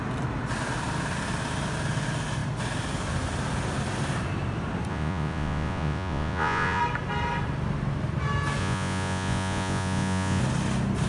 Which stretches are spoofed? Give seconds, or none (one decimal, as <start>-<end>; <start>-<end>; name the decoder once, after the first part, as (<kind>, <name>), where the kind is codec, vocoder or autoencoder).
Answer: 4.9-6.8 (vocoder, Vocos); 8.6-10.4